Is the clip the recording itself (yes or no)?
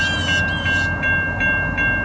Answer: yes